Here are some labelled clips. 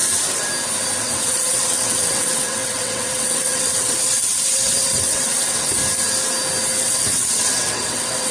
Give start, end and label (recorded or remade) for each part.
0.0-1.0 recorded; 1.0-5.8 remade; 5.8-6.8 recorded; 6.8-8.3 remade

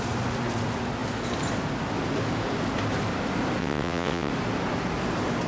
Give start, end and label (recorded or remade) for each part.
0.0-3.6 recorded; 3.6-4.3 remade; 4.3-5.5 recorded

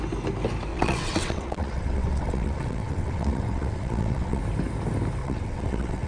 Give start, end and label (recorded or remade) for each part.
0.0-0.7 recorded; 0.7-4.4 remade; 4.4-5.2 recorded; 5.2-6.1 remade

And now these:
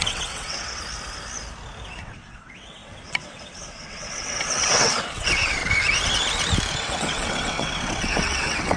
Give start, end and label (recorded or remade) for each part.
0.0-0.8 remade; 0.8-2.0 recorded; 2.0-5.6 remade; 5.6-6.7 recorded; 6.7-8.8 remade

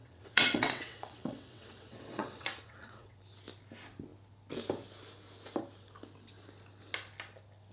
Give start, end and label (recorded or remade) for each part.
0.0-3.2 remade; 3.2-7.7 recorded